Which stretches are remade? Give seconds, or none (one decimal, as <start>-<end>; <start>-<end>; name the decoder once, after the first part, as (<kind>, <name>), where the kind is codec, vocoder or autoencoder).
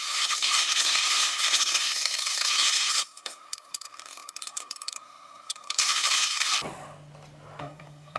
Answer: 0.0-6.5 (codec, SNAC); 7.6-8.2